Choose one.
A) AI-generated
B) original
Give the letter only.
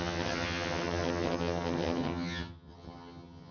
A